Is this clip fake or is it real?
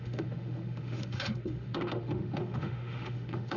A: fake